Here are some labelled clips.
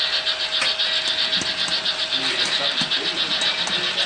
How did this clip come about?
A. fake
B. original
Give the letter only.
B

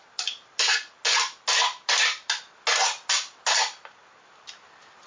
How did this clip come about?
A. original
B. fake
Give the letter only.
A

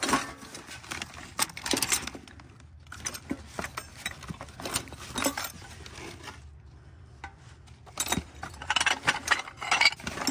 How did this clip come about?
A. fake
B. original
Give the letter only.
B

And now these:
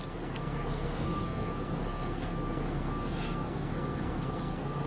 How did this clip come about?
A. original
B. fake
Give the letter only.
B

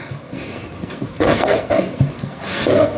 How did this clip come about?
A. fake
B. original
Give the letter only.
A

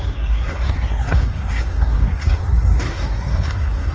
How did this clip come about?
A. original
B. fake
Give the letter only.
B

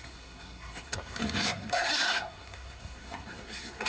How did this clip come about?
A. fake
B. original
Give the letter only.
A